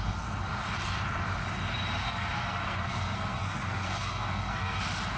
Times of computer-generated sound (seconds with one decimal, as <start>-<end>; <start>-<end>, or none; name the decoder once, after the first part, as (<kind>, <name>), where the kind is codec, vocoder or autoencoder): 2.0-4.8 (codec, SNAC)